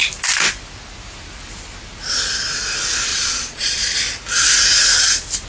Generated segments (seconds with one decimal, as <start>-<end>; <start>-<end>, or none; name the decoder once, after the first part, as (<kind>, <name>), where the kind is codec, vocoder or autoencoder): 3.1-4.0 (vocoder, Vocos)